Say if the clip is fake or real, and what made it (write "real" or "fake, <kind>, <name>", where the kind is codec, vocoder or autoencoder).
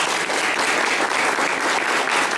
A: real